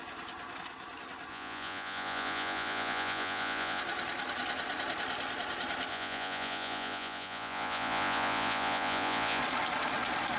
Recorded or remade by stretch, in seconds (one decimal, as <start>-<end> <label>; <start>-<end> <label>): 0.0-1.3 recorded; 1.3-3.8 remade; 3.8-5.9 recorded; 5.9-9.4 remade; 9.4-10.4 recorded